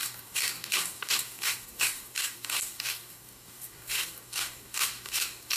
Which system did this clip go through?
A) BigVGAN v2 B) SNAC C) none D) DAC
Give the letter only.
D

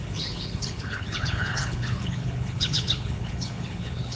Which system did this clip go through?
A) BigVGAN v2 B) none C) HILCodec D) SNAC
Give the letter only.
C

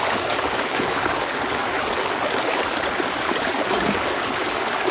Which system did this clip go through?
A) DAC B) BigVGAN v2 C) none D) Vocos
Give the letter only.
A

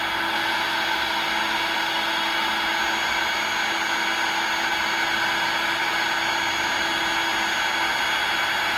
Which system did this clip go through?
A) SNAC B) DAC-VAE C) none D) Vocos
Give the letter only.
C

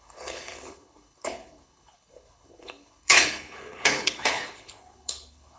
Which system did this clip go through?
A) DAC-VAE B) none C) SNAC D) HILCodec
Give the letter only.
D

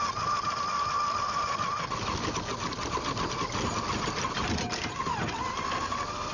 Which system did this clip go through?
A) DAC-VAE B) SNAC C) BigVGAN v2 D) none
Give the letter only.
D